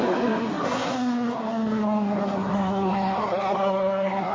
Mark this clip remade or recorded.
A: remade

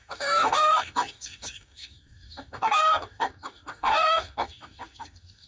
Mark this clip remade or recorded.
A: remade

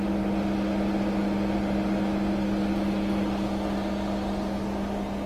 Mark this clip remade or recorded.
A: recorded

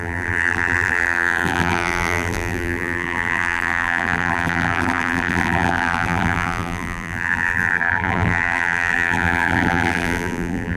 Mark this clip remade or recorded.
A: remade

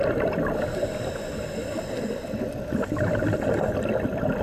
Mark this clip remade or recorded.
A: recorded